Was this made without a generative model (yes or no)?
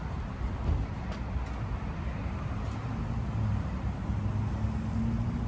yes